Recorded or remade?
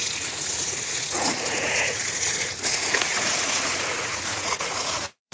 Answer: remade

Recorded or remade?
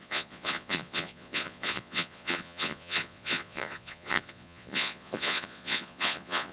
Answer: remade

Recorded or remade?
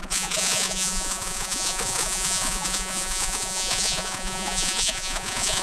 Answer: remade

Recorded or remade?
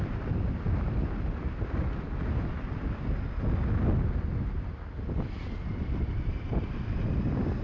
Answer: recorded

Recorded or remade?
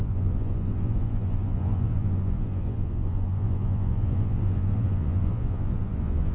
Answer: remade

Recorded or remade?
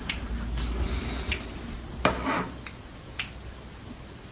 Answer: recorded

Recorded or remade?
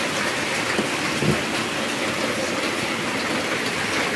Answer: recorded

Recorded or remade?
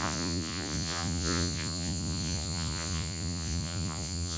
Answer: remade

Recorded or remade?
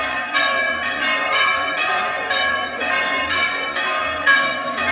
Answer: remade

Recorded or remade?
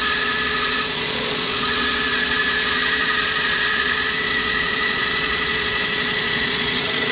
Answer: remade